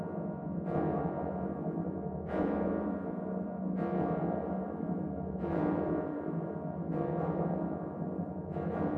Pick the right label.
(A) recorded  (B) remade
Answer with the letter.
B